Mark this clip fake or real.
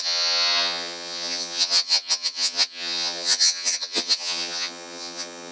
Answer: fake